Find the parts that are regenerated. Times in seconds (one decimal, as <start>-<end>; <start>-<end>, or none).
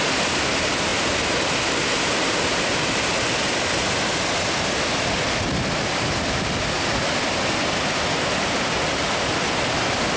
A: none